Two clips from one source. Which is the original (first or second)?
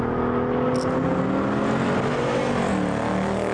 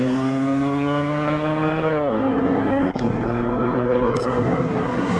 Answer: first